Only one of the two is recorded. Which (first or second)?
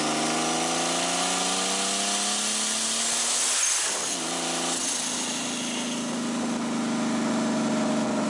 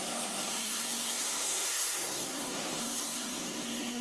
first